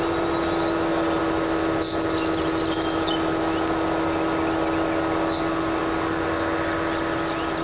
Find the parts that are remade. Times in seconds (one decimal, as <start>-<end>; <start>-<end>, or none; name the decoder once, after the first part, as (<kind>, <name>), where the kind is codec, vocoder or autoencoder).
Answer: none